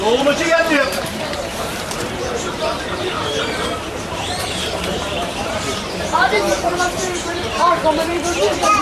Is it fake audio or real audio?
fake